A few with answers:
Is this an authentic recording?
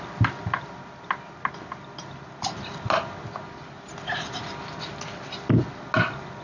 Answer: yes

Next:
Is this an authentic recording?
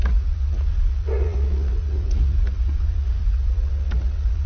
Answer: no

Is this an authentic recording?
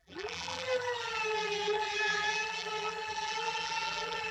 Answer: no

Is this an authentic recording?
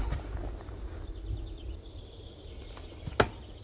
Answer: yes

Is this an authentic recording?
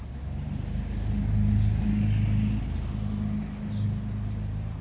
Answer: yes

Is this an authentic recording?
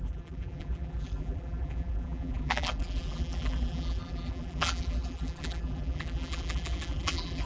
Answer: no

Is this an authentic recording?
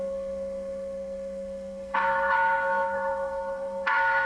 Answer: no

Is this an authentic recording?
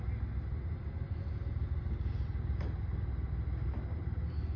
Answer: yes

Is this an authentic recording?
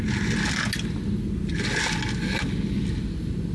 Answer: yes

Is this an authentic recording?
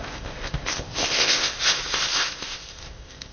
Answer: no